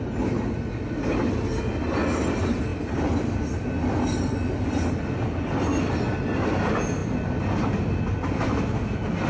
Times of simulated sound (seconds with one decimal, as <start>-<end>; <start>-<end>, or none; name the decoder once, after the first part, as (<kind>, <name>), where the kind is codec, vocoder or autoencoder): none